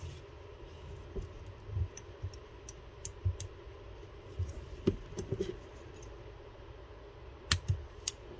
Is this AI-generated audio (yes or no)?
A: no